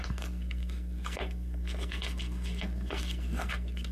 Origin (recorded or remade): remade